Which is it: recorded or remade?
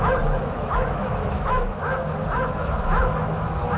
remade